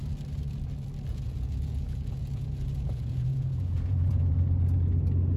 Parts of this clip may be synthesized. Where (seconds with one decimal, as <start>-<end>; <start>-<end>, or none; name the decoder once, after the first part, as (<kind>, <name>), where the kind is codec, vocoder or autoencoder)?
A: 1.1-4.3 (vocoder, Vocos)